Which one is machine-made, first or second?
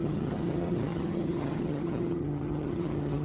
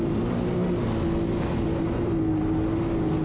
first